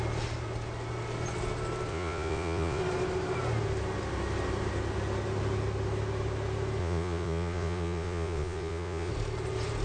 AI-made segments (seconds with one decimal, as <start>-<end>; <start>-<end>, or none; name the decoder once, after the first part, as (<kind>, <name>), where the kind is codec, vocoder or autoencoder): 1.9-2.8 (vocoder, Vocos); 6.8-9.1